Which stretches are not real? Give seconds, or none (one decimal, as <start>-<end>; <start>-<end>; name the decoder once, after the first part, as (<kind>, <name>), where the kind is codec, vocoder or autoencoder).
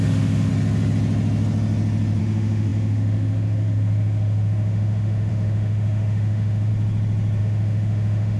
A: 0.0-0.5 (autoencoder, DAC-VAE); 2.2-6.7; 7.4-8.4